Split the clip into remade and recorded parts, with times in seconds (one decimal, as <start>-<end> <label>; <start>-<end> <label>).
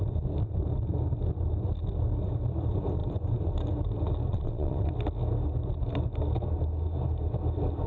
0.0-4.3 recorded; 4.3-4.9 remade; 4.9-7.9 recorded